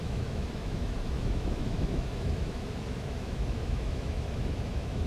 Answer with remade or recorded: remade